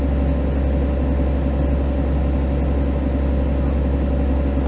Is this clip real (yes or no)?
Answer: yes